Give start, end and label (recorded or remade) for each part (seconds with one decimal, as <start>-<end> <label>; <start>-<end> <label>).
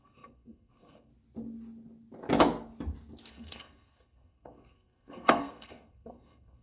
0.0-1.1 remade; 1.1-3.3 recorded; 3.3-6.6 remade